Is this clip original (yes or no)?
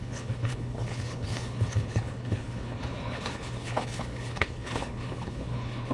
no